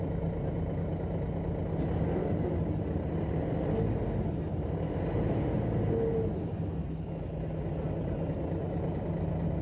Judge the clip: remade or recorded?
recorded